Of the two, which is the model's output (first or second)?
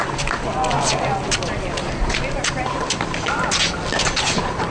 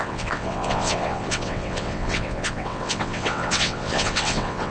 second